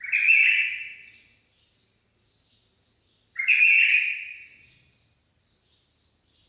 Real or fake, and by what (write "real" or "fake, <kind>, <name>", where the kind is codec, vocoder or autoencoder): real